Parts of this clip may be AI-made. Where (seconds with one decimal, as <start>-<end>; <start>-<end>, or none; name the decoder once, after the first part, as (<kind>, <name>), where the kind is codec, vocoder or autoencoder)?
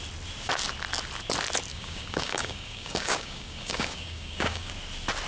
1.7-4.7 (codec, DAC)